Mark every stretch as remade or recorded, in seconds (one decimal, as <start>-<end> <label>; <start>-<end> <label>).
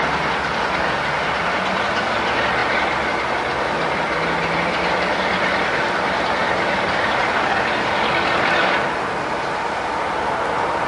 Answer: 0.0-10.9 recorded